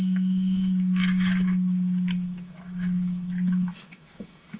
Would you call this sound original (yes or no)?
no